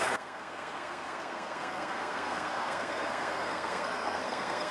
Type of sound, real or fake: fake